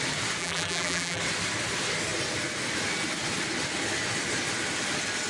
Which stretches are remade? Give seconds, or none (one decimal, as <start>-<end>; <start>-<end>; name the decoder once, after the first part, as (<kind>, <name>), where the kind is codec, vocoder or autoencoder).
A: 0.4-1.2 (vocoder, BigVGAN v2)